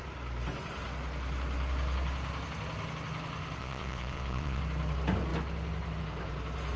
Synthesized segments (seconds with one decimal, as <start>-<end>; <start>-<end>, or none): 3.6-4.6